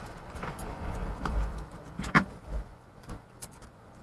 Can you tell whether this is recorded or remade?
remade